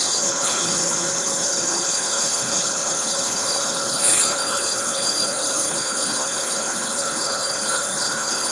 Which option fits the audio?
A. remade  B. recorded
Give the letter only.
A